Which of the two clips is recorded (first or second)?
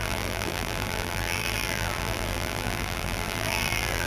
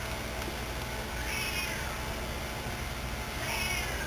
second